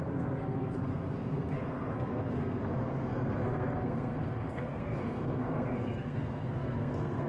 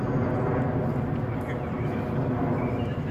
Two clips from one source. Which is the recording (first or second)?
second